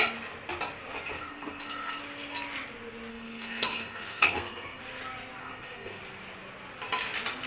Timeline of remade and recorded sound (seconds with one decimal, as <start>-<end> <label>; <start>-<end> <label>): 0.0-1.1 recorded; 1.1-2.0 remade; 2.0-3.1 recorded; 3.1-4.8 remade; 4.8-5.4 recorded; 5.4-6.0 remade; 6.0-7.5 recorded